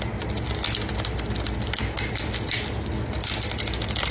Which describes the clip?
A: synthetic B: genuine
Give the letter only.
B